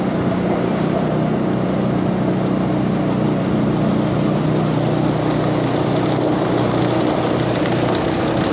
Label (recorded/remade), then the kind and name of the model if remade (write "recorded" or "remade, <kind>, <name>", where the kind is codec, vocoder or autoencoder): recorded